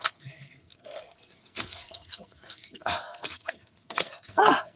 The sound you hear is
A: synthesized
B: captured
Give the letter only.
A